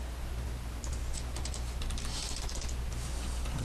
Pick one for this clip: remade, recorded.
recorded